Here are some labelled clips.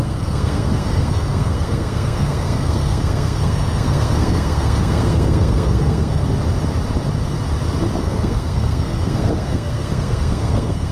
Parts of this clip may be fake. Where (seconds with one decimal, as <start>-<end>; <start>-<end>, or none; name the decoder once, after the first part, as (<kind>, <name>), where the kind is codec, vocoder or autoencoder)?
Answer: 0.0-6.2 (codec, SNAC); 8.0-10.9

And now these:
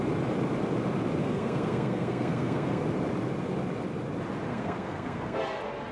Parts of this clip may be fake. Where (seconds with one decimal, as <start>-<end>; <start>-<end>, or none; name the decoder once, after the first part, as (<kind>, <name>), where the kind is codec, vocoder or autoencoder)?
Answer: 1.2-2.8 (codec, SNAC); 4.5-5.4

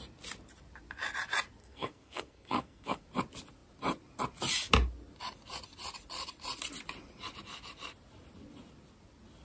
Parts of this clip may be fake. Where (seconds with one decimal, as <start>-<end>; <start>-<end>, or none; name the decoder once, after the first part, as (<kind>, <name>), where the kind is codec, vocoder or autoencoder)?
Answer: 1.6-3.0 (codec, SNAC)